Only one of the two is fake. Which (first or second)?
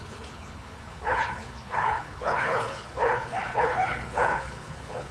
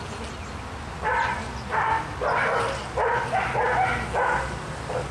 first